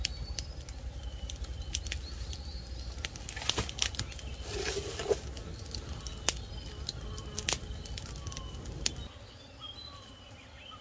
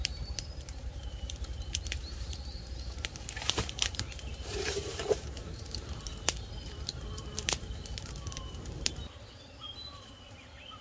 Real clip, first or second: first